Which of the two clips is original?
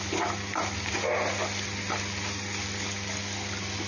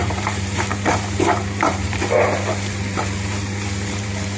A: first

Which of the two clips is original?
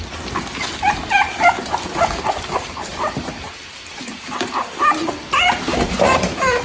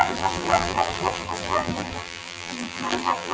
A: first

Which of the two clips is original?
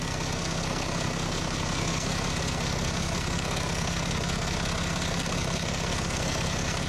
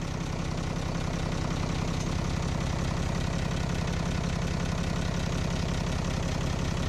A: second